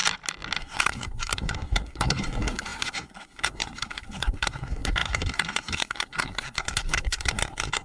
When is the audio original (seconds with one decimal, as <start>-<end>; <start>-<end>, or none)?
0.0-0.6